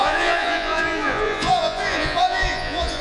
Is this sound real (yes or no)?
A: no